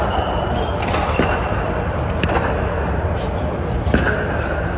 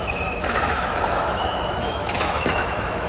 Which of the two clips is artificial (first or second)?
second